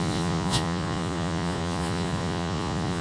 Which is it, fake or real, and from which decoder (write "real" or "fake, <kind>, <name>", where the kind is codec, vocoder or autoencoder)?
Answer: fake, vocoder, Vocos